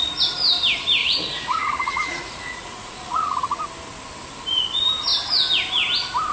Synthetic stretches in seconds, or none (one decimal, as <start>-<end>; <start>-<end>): 1.0-3.6